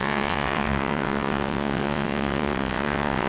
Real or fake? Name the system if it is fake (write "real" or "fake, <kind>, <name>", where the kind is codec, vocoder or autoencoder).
fake, vocoder, WaveNeXt